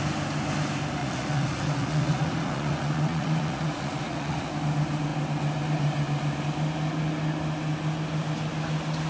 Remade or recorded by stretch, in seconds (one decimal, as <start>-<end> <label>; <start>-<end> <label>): 0.0-1.0 recorded; 1.0-4.5 remade; 4.5-9.1 recorded